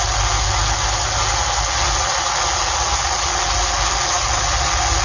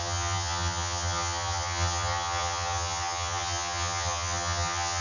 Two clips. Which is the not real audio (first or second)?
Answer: second